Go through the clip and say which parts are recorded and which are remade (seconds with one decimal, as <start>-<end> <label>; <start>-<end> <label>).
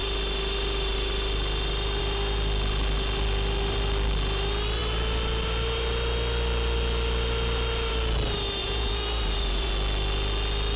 0.0-8.6 recorded; 8.6-9.7 remade; 9.7-10.8 recorded